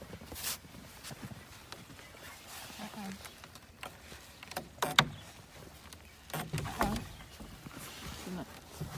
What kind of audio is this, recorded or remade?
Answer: recorded